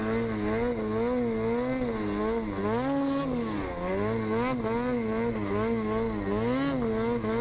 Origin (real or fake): real